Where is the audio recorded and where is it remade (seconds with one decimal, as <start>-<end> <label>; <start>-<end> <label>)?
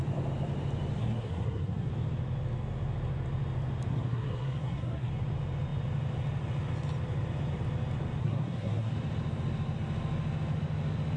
0.0-1.0 recorded; 1.0-1.9 remade; 1.9-3.9 recorded; 3.9-5.1 remade; 5.1-8.2 recorded; 8.2-8.9 remade; 8.9-11.2 recorded